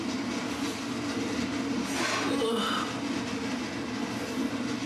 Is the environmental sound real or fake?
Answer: real